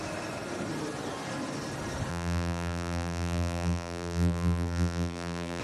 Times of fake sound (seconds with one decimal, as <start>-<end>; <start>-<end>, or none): 2.1-5.6